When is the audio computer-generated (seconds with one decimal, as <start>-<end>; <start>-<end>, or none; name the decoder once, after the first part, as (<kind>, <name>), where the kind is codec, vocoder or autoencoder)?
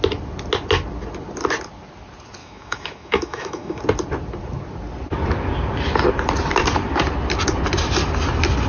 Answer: 2.4-3.8 (autoencoder, DAC-VAE)